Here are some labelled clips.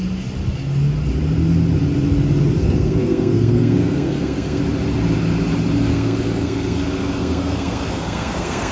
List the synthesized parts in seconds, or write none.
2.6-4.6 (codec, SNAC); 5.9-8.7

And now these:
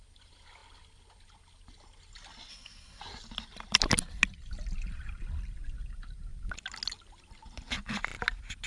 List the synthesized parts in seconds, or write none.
2.5-3.0 (codec, SNAC)

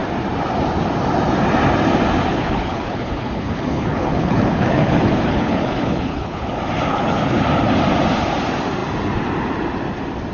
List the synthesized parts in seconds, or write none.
2.3-6.5 (codec, HILCodec); 6.9-7.4

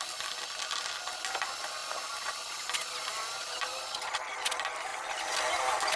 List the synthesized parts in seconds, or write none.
none